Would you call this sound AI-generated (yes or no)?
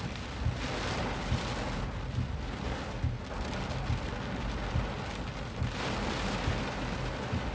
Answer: no